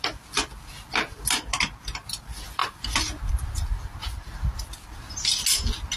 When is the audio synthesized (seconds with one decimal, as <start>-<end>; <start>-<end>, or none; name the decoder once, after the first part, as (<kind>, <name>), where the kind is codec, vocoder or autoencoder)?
none